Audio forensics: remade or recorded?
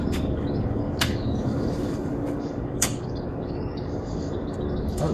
remade